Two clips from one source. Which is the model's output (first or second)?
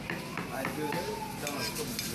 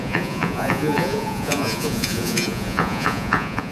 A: second